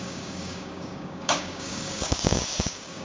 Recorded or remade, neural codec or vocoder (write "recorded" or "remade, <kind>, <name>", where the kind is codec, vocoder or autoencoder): remade, codec, DAC